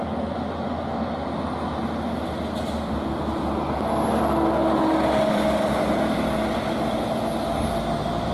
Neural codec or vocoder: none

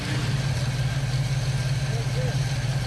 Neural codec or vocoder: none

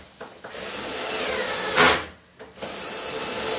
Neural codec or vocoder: none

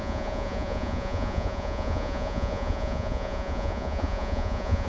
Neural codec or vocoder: vocoder, Vocos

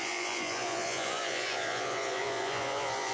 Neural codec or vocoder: vocoder, Vocos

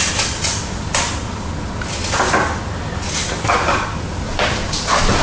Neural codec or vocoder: none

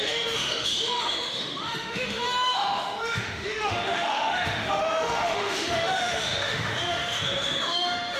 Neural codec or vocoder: autoencoder, DAC-VAE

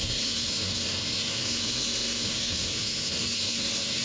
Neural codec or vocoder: codec, SNAC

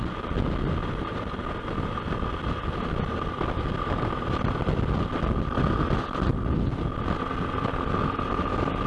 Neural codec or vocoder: none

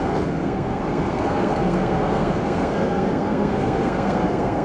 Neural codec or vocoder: codec, SNAC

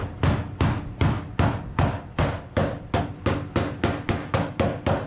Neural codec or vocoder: none